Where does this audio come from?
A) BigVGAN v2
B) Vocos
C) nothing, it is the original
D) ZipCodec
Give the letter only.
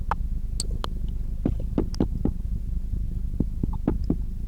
C